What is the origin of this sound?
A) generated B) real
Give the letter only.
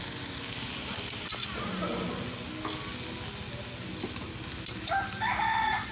B